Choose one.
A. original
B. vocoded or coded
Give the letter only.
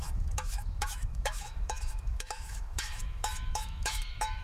B